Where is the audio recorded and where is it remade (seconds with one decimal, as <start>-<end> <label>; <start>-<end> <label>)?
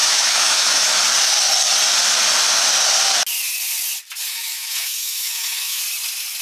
0.0-1.0 remade; 1.0-4.3 recorded; 4.3-5.8 remade; 5.8-6.4 recorded